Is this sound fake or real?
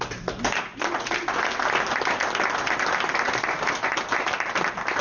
real